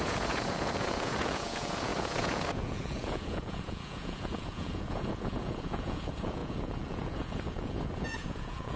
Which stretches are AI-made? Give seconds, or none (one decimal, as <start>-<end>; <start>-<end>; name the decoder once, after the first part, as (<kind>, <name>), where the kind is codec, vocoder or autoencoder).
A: 0.0-8.8 (vocoder, Vocos)